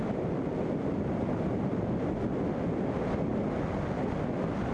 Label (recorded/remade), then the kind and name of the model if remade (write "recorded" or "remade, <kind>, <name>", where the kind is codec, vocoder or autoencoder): recorded